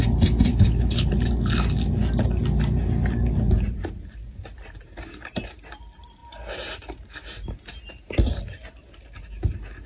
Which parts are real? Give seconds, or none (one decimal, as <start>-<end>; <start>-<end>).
0.0-0.5; 1.1-9.9